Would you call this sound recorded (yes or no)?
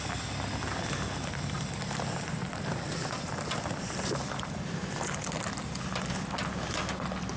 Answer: yes